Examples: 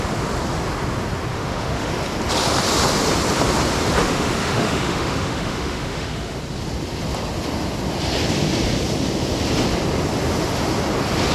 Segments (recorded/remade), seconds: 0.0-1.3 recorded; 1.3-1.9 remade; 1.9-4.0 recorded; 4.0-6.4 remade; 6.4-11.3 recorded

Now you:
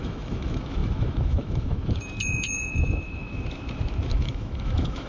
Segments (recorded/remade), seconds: 0.0-5.1 remade

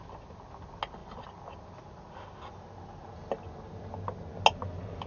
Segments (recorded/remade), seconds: 0.0-5.1 recorded

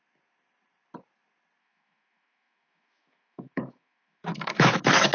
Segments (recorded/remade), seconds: 0.0-1.6 recorded; 1.6-5.1 remade